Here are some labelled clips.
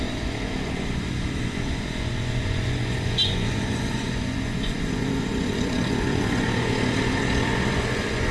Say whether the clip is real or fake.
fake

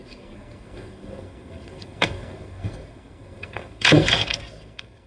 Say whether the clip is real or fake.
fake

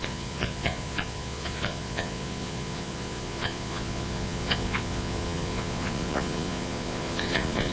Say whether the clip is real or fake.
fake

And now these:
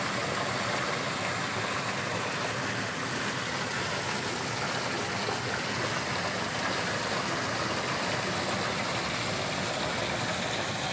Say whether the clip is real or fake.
real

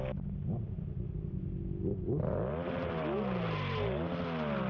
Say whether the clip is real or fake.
real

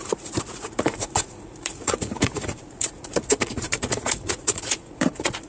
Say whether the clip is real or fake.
fake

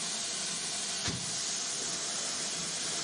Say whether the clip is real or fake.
real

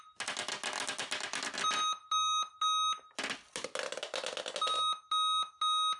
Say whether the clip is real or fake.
real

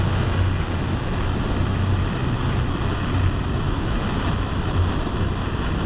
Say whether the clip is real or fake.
real